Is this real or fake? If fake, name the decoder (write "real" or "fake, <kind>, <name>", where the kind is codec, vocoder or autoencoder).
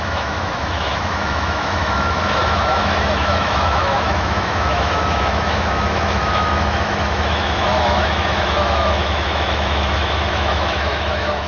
fake, autoencoder, DAC-VAE